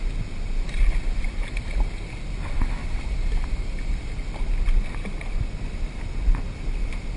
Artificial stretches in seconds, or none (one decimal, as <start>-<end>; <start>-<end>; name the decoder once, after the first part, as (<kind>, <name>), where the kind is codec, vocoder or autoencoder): 2.8-4.1 (vocoder, BigVGAN v2)